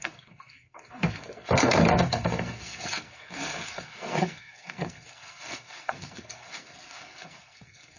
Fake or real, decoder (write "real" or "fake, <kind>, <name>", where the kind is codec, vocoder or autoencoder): fake, codec, SNAC